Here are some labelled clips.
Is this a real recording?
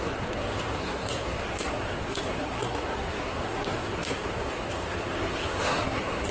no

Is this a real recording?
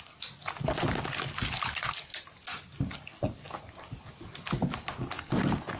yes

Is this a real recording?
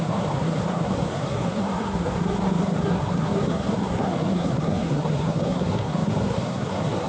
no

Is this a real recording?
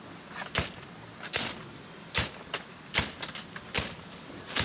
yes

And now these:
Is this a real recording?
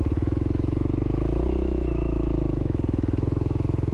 no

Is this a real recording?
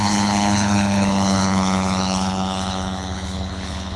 no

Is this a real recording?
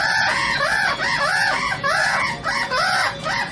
no